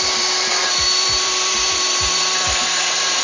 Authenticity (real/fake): fake